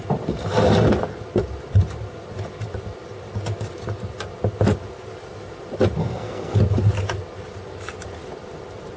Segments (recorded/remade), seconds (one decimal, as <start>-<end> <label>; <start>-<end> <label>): 0.0-6.0 recorded; 6.0-6.6 remade; 6.6-9.0 recorded